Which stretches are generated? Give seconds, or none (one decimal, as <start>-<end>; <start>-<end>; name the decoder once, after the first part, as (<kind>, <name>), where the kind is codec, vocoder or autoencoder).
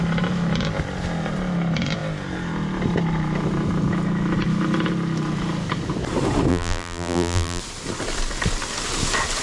6.5-7.6 (vocoder, BigVGAN v2)